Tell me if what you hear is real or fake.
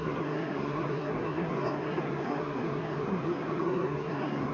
fake